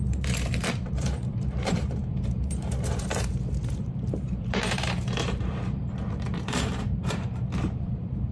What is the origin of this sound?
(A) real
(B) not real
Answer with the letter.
B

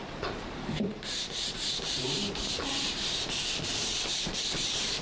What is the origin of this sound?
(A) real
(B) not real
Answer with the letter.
B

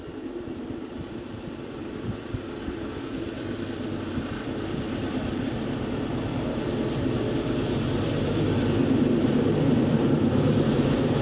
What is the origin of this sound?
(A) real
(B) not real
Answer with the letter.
B